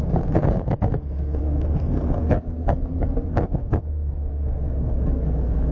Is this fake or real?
fake